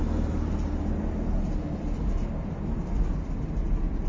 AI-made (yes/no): no